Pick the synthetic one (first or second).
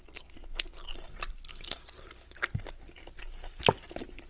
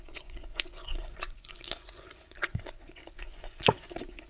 second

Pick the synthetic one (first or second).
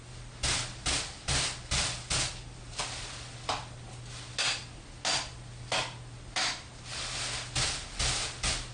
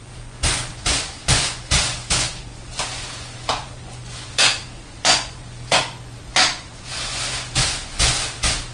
second